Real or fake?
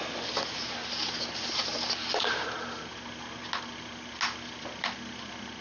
real